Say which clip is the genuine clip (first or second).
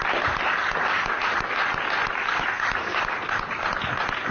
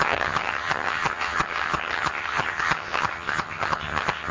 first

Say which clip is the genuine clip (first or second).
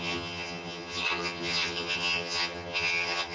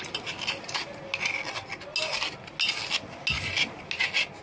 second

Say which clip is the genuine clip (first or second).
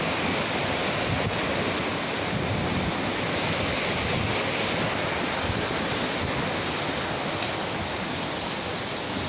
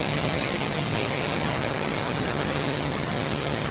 first